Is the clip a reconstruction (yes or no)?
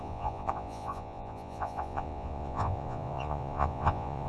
yes